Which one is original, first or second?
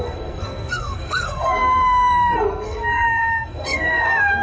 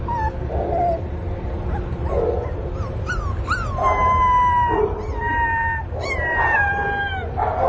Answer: second